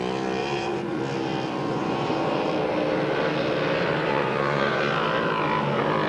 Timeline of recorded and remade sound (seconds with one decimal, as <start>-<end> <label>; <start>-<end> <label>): 0.0-0.4 recorded; 0.4-1.0 remade; 1.0-1.6 recorded; 1.6-2.5 remade; 2.5-4.1 recorded; 4.1-4.9 remade; 4.9-6.1 recorded